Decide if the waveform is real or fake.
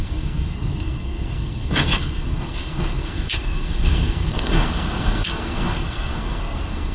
fake